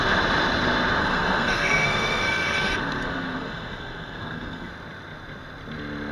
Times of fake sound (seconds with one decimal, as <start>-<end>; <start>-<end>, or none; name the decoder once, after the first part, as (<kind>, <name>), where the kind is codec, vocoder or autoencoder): 1.0-4.7 (codec, SNAC)